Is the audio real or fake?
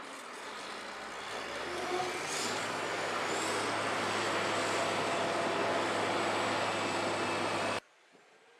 real